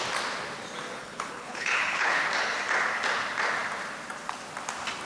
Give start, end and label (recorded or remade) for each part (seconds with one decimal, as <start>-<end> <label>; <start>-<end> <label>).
0.0-1.0 recorded; 1.0-2.2 remade; 2.2-5.1 recorded